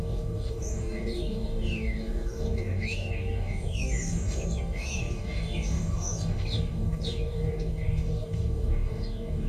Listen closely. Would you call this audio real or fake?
fake